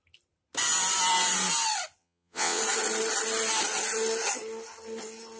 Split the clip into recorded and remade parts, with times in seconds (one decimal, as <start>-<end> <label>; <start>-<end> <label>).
0.0-2.0 recorded; 2.0-2.6 remade; 2.6-5.4 recorded